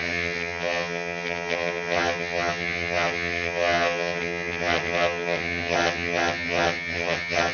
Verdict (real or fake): fake